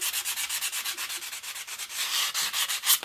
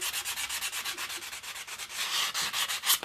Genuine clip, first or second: second